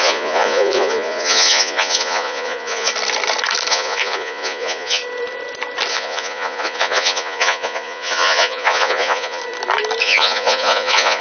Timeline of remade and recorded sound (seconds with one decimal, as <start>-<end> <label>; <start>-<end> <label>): 0.0-2.9 remade; 2.9-3.7 recorded; 3.7-5.0 remade; 5.0-5.9 recorded; 5.9-9.4 remade; 9.4-10.0 recorded; 10.0-11.2 remade